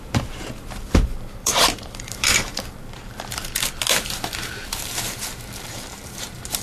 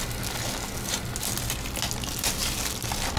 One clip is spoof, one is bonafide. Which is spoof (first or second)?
first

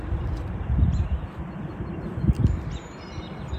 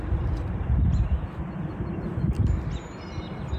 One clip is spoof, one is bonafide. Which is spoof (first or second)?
first